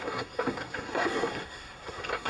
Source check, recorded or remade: remade